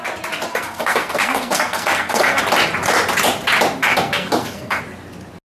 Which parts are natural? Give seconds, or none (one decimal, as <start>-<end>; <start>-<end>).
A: 0.0-0.5; 2.4-3.8; 4.8-5.5